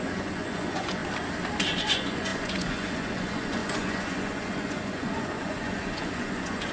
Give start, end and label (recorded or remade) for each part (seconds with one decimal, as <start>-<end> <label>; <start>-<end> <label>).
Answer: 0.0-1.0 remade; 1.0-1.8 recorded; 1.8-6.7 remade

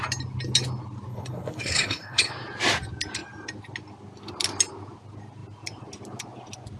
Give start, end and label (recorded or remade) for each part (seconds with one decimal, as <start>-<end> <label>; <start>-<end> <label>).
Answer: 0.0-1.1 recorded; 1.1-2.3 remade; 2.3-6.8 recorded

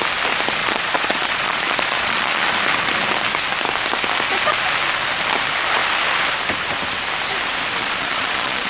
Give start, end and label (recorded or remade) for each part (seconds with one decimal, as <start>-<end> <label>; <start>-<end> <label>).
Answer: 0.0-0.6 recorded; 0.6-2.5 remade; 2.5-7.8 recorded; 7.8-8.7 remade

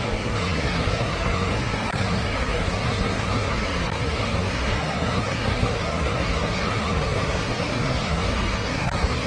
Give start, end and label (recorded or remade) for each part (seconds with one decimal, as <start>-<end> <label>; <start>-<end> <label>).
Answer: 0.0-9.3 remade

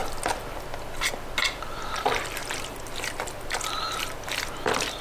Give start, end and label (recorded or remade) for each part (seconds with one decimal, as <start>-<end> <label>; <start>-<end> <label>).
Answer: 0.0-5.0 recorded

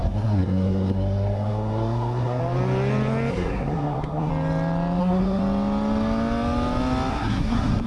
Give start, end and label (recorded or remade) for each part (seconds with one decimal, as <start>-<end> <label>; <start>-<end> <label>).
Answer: 0.0-2.4 remade; 2.4-3.3 recorded; 3.3-4.3 remade; 4.3-5.0 recorded; 5.0-5.4 remade; 5.4-7.1 recorded; 7.1-7.9 remade

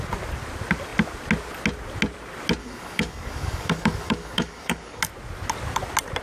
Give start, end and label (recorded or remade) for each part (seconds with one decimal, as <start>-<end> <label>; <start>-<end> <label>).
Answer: 0.0-2.6 recorded; 2.6-5.0 remade; 5.0-6.2 recorded

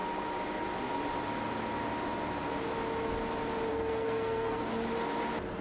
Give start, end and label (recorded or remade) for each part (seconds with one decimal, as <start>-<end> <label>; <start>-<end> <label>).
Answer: 0.0-3.7 recorded; 3.7-4.6 remade; 4.6-5.6 recorded